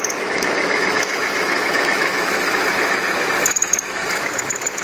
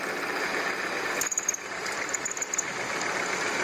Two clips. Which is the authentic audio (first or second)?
second